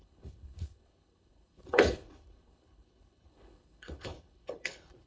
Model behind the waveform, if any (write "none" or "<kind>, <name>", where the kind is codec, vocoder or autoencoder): codec, HILCodec